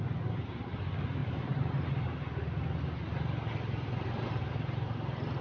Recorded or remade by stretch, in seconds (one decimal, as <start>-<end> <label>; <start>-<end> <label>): 0.0-5.4 recorded